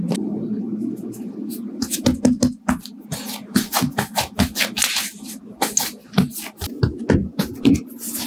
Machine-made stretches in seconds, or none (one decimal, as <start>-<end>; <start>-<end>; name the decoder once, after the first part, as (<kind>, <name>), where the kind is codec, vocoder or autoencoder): 7.2-7.7 (vocoder, BigVGAN v2)